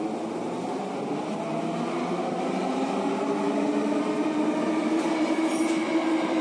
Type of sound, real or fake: real